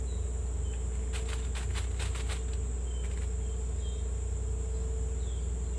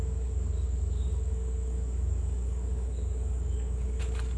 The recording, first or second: first